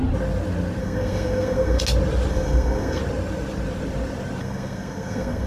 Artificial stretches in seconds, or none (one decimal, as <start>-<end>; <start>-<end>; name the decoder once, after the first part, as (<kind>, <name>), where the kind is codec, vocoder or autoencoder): 0.8-1.8 (codec, SNAC); 2.3-3.0; 4.4-5.5